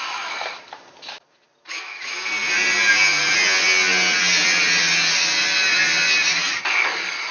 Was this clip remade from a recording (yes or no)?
no